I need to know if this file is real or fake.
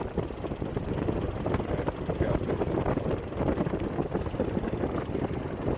real